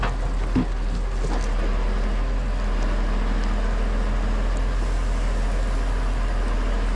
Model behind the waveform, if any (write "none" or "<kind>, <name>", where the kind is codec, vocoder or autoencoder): none